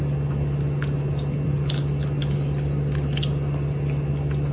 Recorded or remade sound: recorded